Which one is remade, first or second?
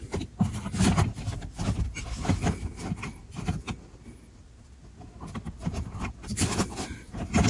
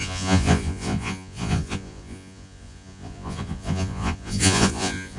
second